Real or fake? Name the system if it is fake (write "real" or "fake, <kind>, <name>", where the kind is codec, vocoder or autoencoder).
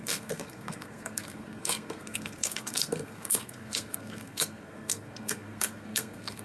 fake, codec, SNAC